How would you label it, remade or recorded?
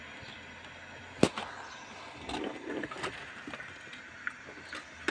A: recorded